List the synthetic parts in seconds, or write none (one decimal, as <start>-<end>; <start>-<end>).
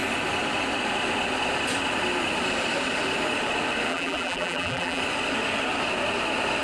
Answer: 3.9-5.0